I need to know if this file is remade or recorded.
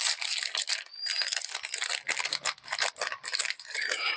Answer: recorded